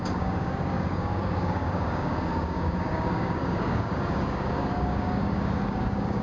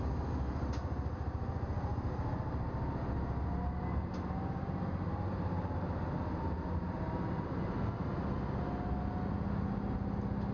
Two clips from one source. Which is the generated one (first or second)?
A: first